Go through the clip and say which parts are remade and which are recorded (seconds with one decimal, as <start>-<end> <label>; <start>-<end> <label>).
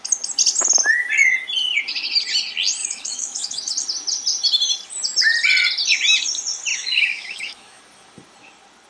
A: 0.0-2.8 recorded; 2.8-3.7 remade; 3.7-6.7 recorded; 6.7-7.8 remade; 7.8-8.9 recorded